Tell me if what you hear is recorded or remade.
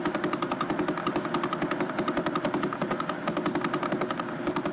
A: recorded